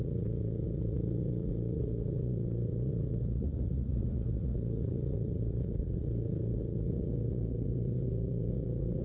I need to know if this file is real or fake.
fake